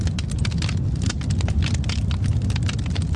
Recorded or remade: recorded